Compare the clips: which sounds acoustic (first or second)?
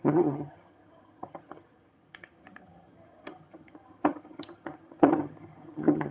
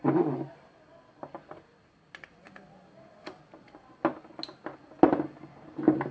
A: second